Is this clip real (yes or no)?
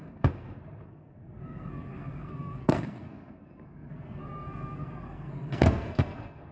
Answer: no